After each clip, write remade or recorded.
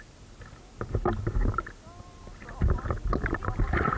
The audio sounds recorded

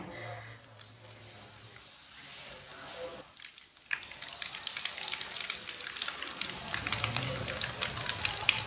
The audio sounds recorded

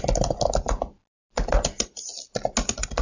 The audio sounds recorded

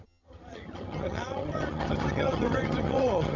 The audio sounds remade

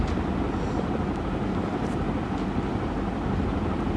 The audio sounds recorded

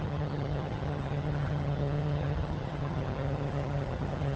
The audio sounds remade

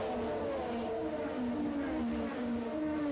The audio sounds recorded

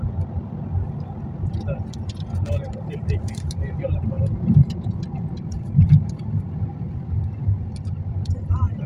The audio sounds recorded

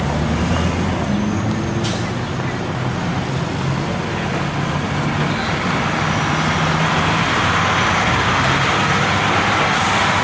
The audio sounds recorded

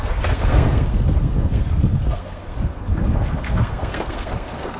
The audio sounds remade